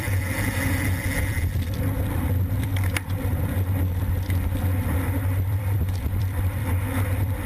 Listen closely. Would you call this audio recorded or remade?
remade